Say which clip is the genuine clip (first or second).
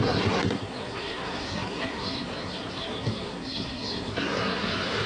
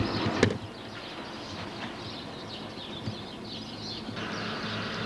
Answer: second